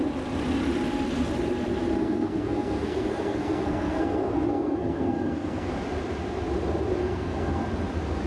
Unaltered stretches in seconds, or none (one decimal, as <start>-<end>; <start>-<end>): 0.0-2.0; 5.7-7.0; 7.6-8.3